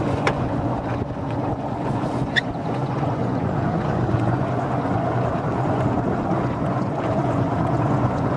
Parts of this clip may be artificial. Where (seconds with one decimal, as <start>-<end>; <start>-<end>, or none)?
0.0-8.4

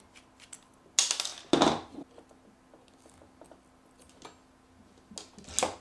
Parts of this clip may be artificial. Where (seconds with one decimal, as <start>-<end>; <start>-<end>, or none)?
none

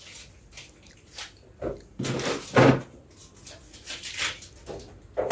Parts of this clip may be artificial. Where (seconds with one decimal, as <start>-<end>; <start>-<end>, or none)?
none

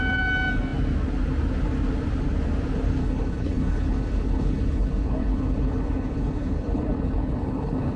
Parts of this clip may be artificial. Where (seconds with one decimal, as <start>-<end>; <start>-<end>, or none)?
3.0-8.0